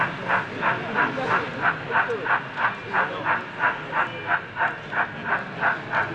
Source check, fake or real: real